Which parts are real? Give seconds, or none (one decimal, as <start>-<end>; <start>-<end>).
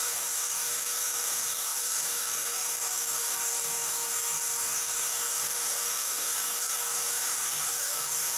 none